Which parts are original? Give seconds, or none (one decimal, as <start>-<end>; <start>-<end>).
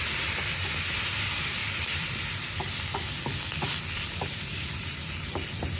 0.0-1.6; 5.1-5.8